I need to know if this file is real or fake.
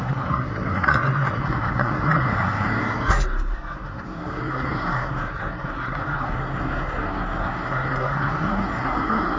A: fake